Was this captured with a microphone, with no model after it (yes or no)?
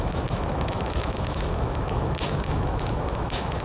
no